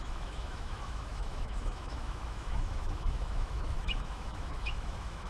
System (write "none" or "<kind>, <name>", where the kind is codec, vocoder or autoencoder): autoencoder, DAC-VAE